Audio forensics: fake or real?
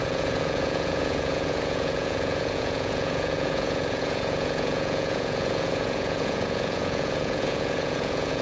fake